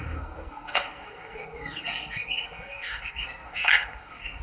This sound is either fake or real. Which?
fake